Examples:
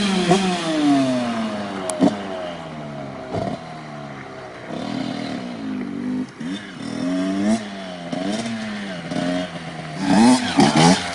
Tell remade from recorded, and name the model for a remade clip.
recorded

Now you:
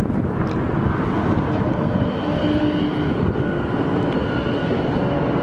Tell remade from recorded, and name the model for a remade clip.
recorded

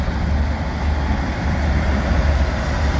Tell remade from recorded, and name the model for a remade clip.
recorded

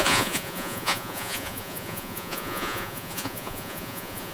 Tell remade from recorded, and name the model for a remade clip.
remade, vocoder, Vocos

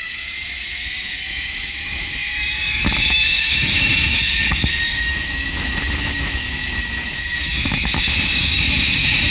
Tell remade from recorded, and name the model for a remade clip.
remade, autoencoder, DAC-VAE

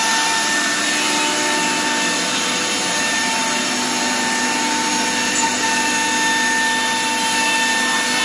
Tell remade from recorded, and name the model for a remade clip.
recorded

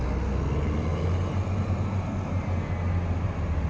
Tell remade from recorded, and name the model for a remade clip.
recorded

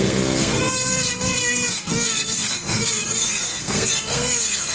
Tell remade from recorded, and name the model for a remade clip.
remade, codec, SNAC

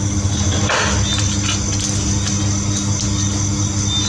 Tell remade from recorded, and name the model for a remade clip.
recorded